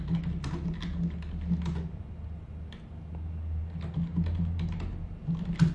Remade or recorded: recorded